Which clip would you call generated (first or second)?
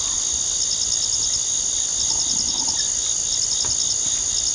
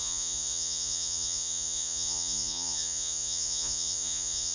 second